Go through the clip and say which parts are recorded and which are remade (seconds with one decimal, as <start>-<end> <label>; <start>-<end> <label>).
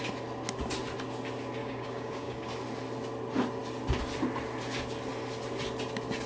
0.0-1.6 recorded; 1.6-2.5 remade; 2.5-6.3 recorded